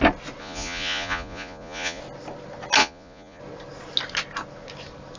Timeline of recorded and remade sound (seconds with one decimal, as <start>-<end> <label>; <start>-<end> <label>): 0.0-0.4 recorded; 0.4-2.0 remade; 2.0-2.8 recorded; 2.8-3.4 remade; 3.4-5.2 recorded